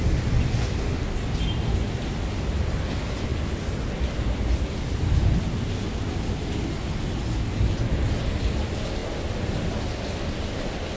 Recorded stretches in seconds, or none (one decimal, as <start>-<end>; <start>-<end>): 0.0-11.0